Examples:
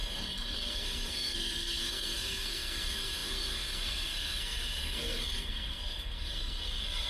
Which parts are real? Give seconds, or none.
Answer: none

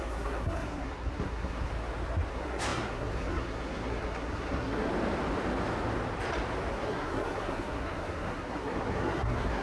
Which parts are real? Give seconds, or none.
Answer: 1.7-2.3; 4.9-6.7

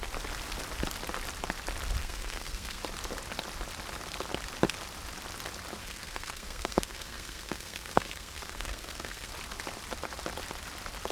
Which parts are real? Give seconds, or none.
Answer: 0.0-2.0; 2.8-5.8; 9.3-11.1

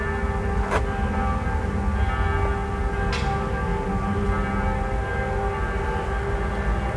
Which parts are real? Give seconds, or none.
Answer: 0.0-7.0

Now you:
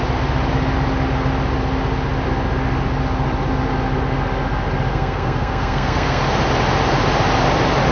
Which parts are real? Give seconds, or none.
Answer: 0.0-4.9; 6.2-7.9